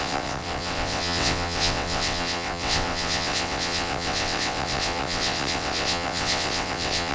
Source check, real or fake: fake